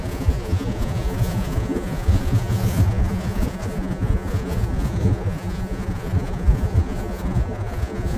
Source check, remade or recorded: remade